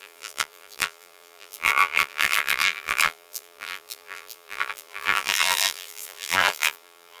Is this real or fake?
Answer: fake